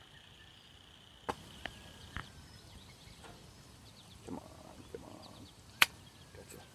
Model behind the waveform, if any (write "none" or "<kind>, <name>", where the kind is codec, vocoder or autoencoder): vocoder, BigVGAN v2